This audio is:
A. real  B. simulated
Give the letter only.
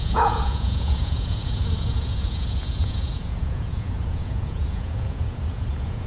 B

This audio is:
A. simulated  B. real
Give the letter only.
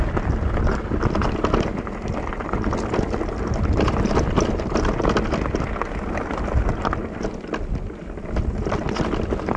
B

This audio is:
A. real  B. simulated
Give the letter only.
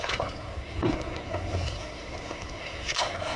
B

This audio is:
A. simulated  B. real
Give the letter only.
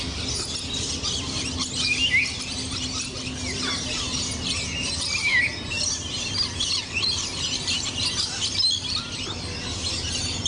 B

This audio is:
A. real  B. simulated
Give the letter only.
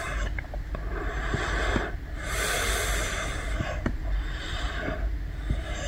A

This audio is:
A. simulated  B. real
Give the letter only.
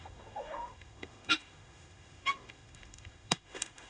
A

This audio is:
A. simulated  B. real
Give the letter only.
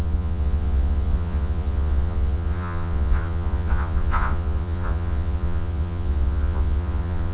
A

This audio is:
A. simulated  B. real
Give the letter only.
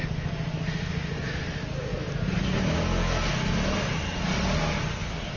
B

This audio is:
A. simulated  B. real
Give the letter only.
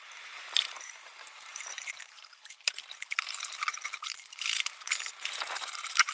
A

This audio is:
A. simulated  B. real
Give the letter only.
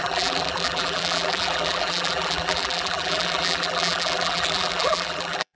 A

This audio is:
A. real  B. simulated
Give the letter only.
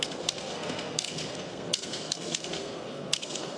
B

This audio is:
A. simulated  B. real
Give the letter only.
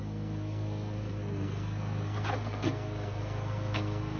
A